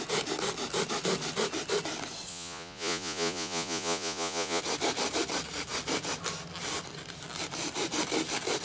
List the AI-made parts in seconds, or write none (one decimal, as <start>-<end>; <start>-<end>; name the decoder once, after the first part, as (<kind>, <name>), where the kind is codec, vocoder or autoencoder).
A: 2.3-4.6 (vocoder, Vocos)